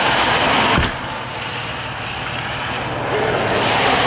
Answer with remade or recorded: recorded